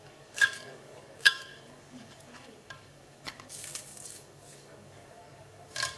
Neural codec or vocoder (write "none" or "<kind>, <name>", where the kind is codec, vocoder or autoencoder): codec, DAC